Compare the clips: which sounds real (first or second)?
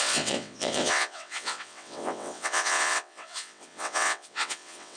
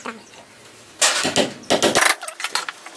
second